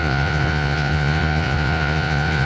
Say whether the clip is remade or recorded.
remade